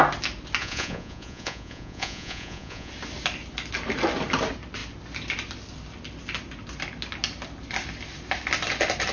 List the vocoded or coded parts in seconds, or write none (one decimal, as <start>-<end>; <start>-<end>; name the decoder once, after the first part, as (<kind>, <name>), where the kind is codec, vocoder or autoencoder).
0.6-2.9 (vocoder, Vocos)